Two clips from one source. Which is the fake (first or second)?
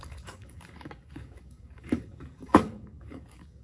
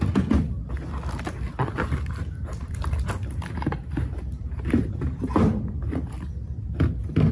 first